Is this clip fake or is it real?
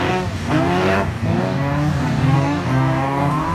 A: fake